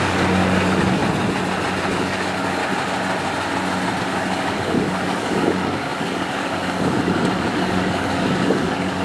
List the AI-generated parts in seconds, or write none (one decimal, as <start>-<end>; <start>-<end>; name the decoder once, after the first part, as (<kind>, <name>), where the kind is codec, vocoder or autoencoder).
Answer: 0.0-1.0 (codec, DAC); 1.9-2.6; 4.0-9.0